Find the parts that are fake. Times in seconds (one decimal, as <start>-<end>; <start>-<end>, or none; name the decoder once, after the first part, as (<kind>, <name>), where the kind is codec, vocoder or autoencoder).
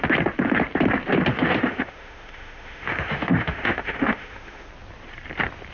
1.3-4.7 (autoencoder, DAC-VAE)